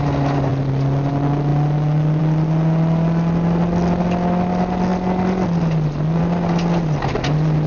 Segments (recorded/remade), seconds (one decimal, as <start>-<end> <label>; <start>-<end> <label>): 0.0-7.7 recorded